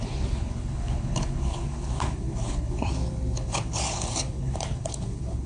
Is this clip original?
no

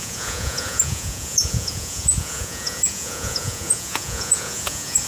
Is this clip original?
no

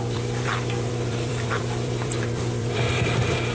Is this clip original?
no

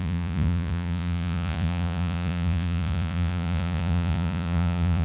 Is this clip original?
no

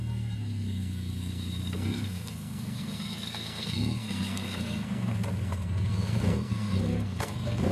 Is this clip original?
no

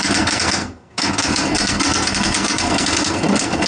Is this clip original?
no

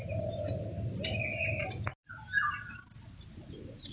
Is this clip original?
yes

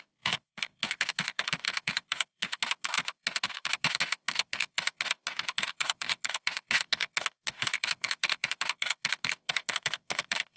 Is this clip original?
no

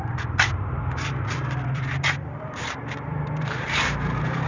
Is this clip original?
no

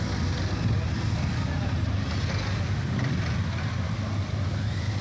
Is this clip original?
yes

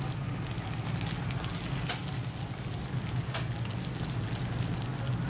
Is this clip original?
yes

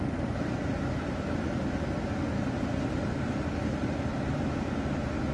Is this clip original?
yes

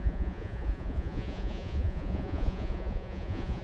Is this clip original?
no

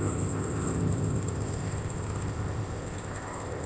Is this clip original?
no